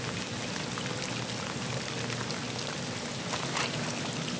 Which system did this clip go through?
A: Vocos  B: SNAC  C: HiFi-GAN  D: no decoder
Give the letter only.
D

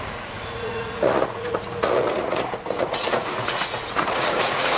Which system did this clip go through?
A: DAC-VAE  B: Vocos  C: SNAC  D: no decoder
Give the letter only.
B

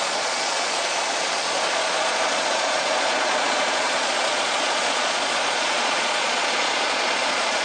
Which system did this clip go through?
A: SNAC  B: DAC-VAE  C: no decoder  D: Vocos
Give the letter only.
D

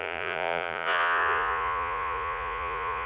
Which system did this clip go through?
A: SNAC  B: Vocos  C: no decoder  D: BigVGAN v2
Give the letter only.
B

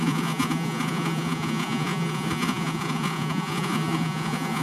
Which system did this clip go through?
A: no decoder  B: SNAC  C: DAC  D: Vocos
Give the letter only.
D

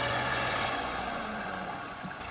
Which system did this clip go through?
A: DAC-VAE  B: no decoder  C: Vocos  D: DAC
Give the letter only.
C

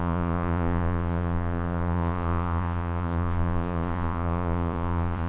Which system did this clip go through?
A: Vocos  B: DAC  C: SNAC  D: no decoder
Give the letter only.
A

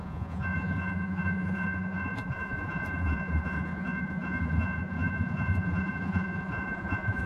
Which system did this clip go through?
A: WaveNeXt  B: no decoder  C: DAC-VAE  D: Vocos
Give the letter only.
D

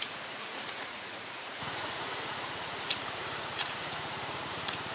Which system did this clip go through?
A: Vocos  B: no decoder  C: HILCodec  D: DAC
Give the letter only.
A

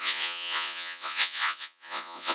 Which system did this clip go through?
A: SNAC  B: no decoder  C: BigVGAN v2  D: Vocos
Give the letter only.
D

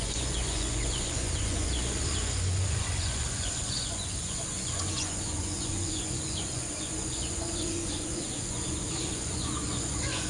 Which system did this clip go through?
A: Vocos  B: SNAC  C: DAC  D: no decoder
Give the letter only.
A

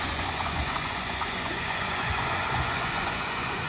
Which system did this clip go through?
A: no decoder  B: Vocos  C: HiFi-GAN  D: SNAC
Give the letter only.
B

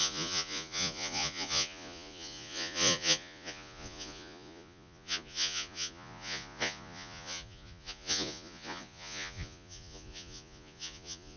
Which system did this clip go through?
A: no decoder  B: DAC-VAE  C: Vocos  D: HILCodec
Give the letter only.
C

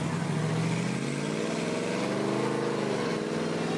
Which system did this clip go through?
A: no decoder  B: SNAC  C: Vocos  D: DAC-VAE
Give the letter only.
A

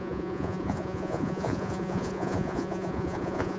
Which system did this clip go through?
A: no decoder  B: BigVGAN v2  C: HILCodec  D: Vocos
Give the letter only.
D